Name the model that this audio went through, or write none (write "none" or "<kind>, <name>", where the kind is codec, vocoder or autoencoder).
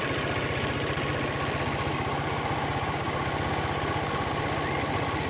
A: none